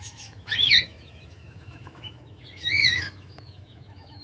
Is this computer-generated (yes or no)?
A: yes